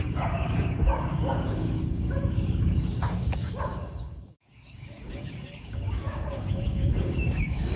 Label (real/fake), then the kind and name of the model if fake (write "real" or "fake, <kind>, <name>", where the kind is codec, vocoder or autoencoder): fake, codec, DAC